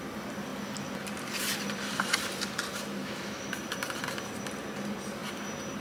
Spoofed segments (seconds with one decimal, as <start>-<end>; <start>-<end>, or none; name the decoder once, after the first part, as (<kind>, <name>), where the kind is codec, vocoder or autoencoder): 3.0-3.5 (autoencoder, DAC-VAE)